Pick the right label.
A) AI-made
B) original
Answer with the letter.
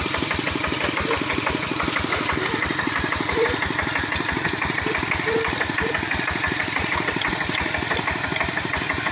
A